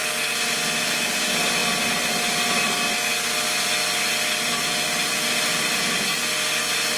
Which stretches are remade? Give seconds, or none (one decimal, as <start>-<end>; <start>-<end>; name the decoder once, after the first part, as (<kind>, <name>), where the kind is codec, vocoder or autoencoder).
none